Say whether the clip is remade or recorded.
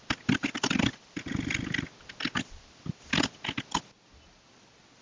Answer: recorded